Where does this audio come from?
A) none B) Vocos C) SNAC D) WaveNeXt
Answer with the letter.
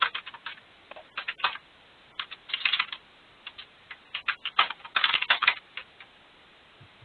A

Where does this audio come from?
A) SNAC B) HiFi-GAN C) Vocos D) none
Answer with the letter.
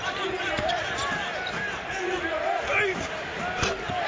D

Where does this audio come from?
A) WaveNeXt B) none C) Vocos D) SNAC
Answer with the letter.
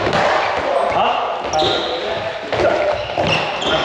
B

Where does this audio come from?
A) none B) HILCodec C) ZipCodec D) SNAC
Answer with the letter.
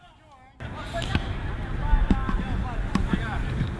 A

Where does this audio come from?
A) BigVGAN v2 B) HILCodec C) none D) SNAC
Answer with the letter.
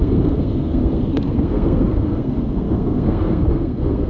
D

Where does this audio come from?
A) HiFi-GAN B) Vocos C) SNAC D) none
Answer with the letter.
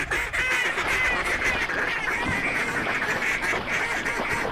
D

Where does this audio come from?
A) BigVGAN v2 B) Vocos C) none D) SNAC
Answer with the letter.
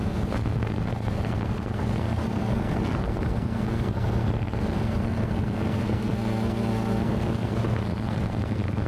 D